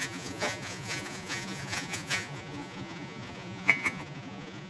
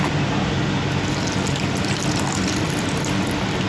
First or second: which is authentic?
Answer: second